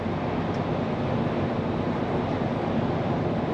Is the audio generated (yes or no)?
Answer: no